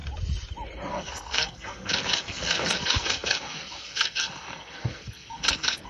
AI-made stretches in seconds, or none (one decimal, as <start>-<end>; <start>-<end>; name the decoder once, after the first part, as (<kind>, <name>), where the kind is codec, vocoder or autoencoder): 0.9-5.9 (codec, SNAC)

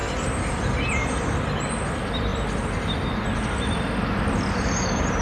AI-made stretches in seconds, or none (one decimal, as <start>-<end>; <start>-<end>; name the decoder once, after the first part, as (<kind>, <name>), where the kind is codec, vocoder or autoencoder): none